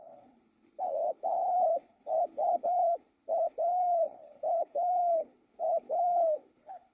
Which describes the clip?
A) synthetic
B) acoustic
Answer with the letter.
A